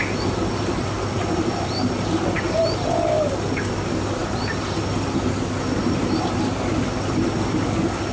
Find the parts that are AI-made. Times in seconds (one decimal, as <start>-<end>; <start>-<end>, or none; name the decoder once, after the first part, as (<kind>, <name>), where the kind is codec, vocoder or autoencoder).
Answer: none